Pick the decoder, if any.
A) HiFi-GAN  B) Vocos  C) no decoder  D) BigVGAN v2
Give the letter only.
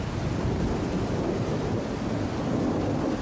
C